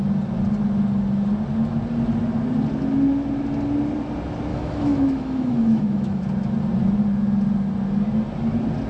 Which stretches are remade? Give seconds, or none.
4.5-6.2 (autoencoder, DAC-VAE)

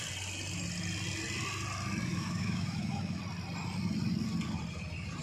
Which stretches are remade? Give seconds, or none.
2.1-3.2 (autoencoder, DAC-VAE)

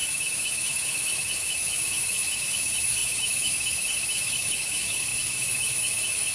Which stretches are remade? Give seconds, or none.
0.0-6.3 (autoencoder, DAC-VAE)

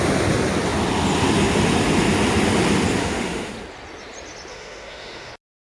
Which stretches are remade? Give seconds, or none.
3.0-3.5 (autoencoder, DAC-VAE); 4.5-5.3

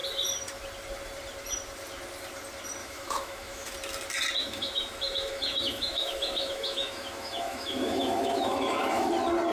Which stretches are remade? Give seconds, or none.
2.8-3.7 (autoencoder, DAC-VAE); 4.4-9.1

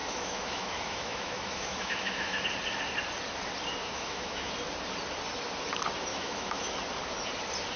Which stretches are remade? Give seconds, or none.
0.0-2.4 (autoencoder, DAC-VAE); 3.8-4.5; 6.1-6.6

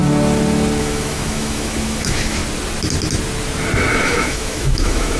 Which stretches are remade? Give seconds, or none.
0.8-2.4 (autoencoder, DAC-VAE); 3.9-5.2

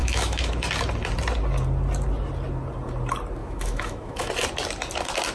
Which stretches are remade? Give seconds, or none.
0.0-0.5 (autoencoder, DAC-VAE); 3.4-4.3